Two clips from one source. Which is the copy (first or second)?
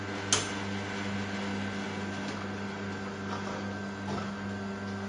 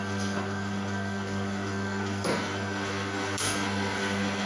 second